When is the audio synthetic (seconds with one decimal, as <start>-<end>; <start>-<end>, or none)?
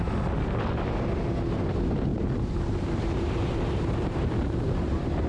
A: 2.1-5.3